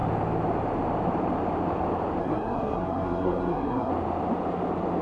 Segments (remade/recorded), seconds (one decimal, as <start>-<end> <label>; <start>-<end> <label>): 0.0-2.2 recorded; 2.2-3.9 remade; 3.9-5.0 recorded